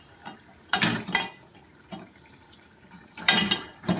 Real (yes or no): no